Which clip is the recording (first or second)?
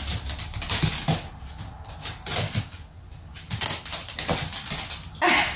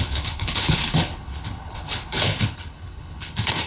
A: first